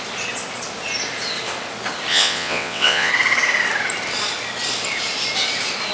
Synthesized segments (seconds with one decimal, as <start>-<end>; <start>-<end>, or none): 2.1-3.1